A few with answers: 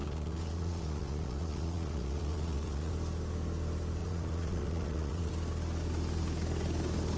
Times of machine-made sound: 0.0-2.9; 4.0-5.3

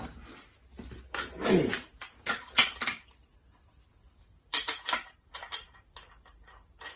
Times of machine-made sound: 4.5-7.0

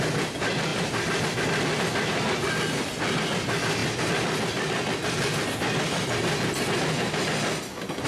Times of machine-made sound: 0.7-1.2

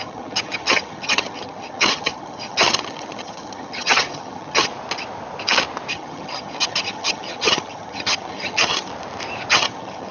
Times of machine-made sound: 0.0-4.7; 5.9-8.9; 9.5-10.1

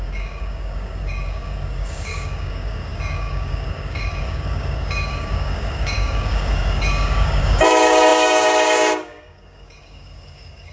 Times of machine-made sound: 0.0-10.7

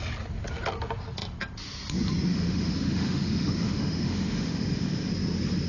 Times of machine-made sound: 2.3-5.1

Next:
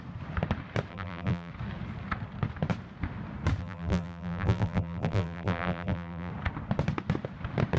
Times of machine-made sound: 0.9-1.5; 3.6-6.3

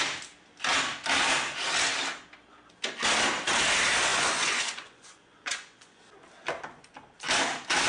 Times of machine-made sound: 4.1-6.0